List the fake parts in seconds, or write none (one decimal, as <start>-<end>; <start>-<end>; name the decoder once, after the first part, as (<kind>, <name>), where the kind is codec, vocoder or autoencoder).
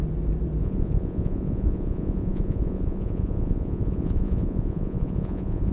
0.6-5.7 (vocoder, Vocos)